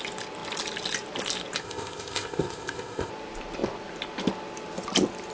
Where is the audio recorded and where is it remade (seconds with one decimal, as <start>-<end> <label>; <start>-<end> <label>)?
0.0-1.6 recorded; 1.6-3.1 remade; 3.1-5.3 recorded